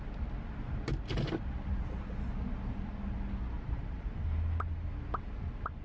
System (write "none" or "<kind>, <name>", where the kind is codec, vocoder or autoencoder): none